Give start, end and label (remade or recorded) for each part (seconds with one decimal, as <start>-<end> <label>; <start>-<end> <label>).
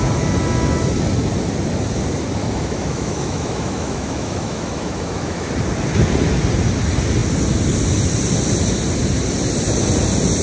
0.0-2.4 recorded; 2.4-5.5 remade; 5.5-10.4 recorded